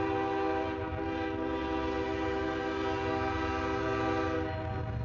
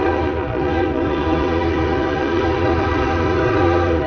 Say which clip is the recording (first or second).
first